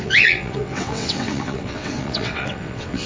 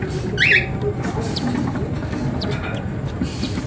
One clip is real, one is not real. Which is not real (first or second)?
first